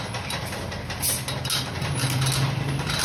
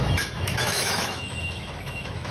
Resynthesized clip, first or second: second